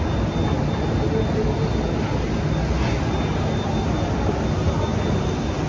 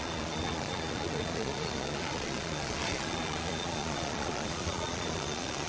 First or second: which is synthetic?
second